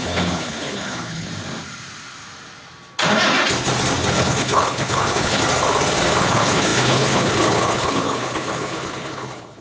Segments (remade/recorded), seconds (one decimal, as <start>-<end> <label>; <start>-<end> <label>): 0.0-1.3 remade; 1.3-4.1 recorded; 4.1-5.4 remade; 5.4-6.2 recorded; 6.2-9.6 remade